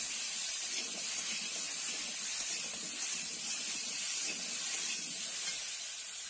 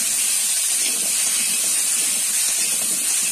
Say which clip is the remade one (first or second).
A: first